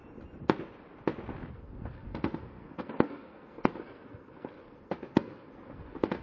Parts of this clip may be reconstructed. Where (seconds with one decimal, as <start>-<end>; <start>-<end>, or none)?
1.5-6.2